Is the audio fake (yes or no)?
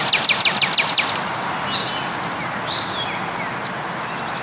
no